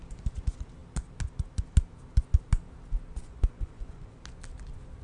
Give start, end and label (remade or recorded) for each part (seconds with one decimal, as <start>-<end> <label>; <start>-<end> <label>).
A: 0.0-3.2 recorded; 3.2-4.2 remade; 4.2-5.0 recorded